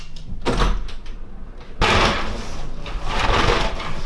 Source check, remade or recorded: recorded